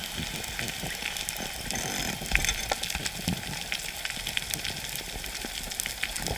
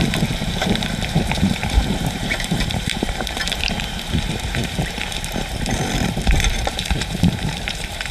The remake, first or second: second